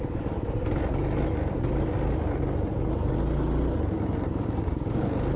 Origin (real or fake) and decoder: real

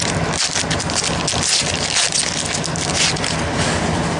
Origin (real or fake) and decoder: real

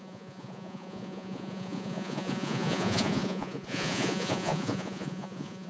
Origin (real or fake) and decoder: fake, vocoder, Vocos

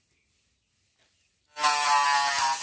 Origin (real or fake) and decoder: real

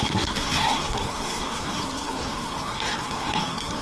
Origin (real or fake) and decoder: fake, codec, SNAC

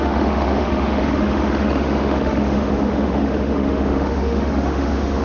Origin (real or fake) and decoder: fake, autoencoder, DAC-VAE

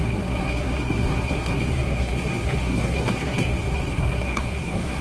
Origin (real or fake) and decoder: fake, codec, SNAC